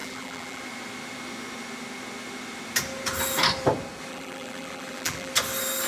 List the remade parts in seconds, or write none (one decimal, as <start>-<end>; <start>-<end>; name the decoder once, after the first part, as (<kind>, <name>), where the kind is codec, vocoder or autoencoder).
0.0-0.6 (vocoder, BigVGAN v2); 4.1-5.3